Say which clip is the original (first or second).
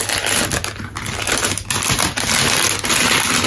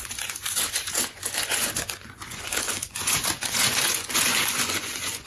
first